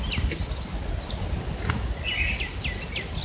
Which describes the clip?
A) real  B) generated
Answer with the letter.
A